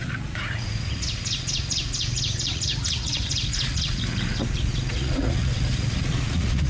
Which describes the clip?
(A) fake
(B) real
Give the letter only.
A